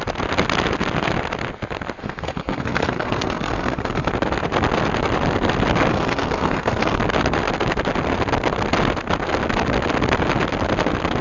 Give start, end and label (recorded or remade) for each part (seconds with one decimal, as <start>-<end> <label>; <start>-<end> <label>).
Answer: 0.0-2.0 recorded; 2.0-4.1 remade; 4.1-5.9 recorded; 5.9-7.0 remade; 7.0-11.2 recorded